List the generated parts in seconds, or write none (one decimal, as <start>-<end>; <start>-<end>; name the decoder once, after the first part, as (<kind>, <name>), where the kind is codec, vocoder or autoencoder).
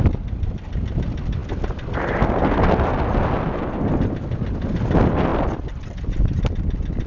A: 5.3-6.5 (vocoder, BigVGAN v2)